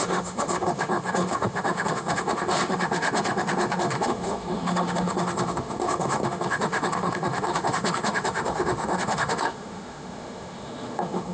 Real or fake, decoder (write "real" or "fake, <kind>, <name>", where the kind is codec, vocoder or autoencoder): fake, autoencoder, DAC-VAE